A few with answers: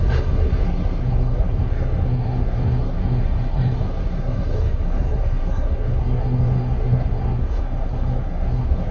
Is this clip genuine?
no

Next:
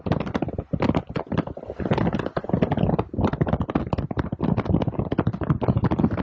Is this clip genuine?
yes